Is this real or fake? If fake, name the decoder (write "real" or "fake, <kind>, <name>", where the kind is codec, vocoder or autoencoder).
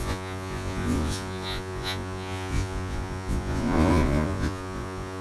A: fake, vocoder, Vocos